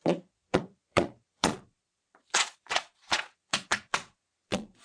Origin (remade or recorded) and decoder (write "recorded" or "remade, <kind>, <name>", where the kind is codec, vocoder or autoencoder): remade, vocoder, Vocos